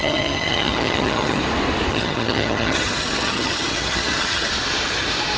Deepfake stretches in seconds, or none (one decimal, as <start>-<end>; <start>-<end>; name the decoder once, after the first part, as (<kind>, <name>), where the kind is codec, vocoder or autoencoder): 0.0-1.4 (vocoder, HiFi-GAN); 1.9-4.5